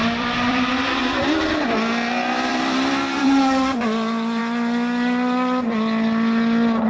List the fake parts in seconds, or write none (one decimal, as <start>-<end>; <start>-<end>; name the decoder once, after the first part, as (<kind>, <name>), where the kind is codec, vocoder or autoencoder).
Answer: 0.0-0.7 (vocoder, BigVGAN v2); 2.5-4.4